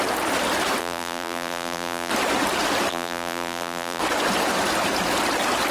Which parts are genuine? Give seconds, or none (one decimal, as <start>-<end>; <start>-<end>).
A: 0.0-0.8; 2.1-2.9; 4.0-5.7